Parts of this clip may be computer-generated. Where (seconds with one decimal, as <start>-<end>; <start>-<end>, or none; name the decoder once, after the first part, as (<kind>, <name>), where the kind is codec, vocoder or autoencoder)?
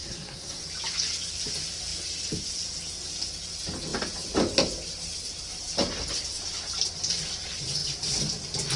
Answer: 0.0-0.6 (codec, SNAC)